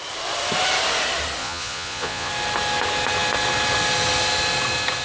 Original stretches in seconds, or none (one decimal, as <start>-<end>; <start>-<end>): 0.0-1.4; 2.3-5.0